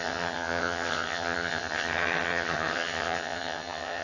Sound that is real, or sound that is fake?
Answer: fake